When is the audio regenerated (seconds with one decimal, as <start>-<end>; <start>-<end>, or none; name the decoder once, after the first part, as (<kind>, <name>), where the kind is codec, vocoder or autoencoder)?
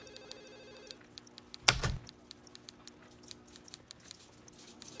none